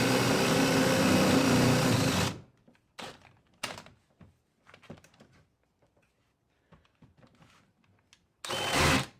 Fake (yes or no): no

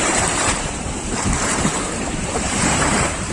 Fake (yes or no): yes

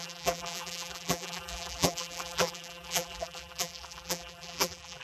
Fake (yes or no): yes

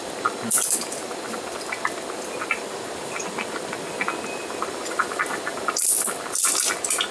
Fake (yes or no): no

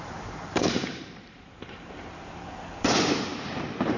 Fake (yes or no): yes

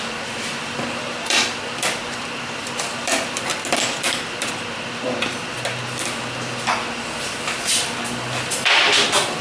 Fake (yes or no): yes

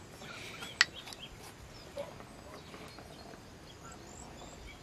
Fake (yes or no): no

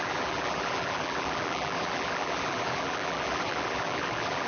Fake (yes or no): yes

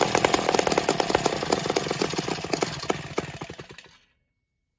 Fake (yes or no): no